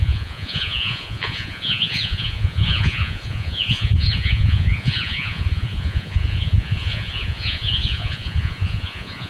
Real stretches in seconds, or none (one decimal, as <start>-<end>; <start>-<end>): none